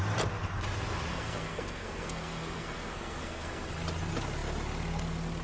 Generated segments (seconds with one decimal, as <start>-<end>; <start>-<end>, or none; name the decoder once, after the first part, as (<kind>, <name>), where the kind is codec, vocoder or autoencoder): 1.1-3.7 (codec, SNAC)